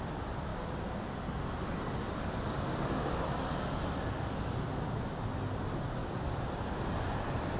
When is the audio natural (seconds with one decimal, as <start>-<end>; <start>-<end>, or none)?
0.0-7.6